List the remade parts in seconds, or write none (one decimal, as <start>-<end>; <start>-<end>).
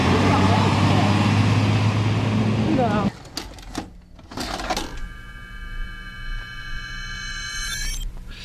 0.0-0.6